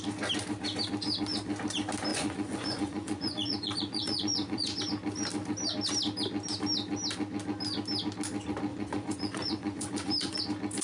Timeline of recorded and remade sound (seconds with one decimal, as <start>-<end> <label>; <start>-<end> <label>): 0.0-2.1 recorded; 2.1-4.8 remade; 4.8-8.7 recorded; 8.7-10.4 remade; 10.4-10.8 recorded